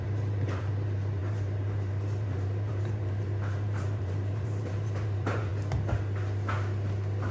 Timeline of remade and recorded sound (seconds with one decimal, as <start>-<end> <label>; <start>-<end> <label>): 0.0-5.5 remade; 5.5-7.3 recorded